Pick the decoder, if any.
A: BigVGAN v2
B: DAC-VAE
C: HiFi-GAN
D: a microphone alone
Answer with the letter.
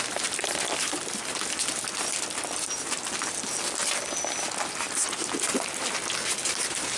D